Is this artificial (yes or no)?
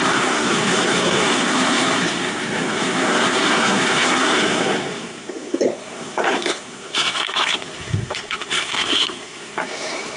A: yes